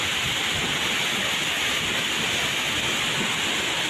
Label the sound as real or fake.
real